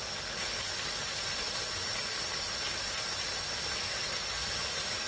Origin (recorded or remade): recorded